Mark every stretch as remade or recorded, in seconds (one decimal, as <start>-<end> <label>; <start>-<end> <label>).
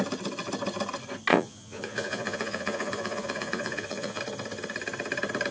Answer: 0.0-1.3 recorded; 1.3-4.2 remade; 4.2-5.5 recorded